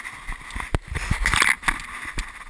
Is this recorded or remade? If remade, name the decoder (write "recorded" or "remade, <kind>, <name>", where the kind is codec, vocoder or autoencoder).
recorded